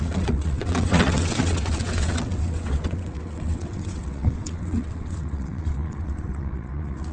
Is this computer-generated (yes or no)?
yes